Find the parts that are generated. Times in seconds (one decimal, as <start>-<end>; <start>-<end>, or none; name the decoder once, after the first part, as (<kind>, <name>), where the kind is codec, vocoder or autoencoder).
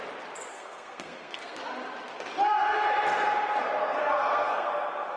0.5-1.6 (codec, SNAC); 4.0-4.7